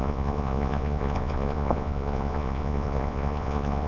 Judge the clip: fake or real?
fake